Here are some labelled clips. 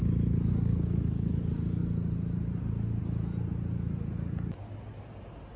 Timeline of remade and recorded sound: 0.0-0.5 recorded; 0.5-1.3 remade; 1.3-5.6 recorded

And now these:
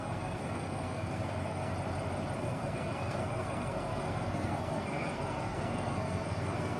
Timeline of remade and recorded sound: 0.0-1.7 remade; 1.7-2.4 recorded; 2.4-6.8 remade

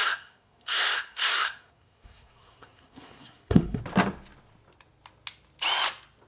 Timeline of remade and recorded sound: 0.0-3.8 remade; 3.8-6.3 recorded

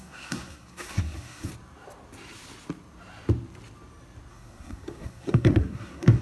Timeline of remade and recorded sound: 0.0-1.5 remade; 1.5-4.3 recorded; 4.3-6.2 remade